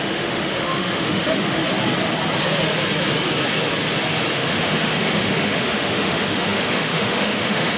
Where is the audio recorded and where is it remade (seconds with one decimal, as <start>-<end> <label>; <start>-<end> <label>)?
0.0-1.6 remade; 1.6-4.3 recorded; 4.3-7.8 remade

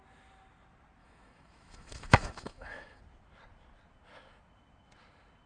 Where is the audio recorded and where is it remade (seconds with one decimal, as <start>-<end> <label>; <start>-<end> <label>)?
0.0-1.0 recorded; 1.0-3.0 remade; 3.0-5.5 recorded

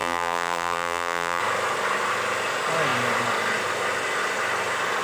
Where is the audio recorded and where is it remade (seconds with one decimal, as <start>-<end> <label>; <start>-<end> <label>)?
0.0-1.4 remade; 1.4-5.0 recorded

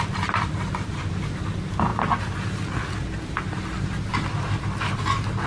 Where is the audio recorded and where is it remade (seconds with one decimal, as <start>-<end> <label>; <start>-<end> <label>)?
0.0-5.5 recorded